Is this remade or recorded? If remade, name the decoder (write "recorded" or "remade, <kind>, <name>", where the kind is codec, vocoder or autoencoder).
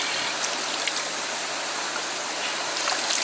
remade, vocoder, BigVGAN v2